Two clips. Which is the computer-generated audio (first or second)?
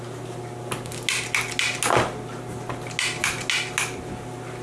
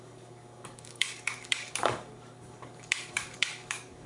second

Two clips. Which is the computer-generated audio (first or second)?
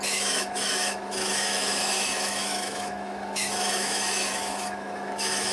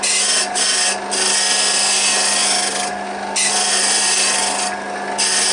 first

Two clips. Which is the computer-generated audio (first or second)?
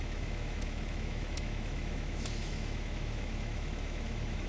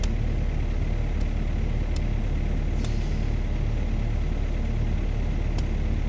first